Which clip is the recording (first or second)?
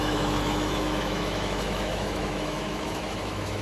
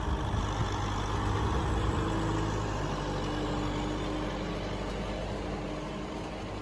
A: second